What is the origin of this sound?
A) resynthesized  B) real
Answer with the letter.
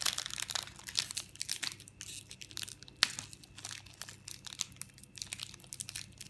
B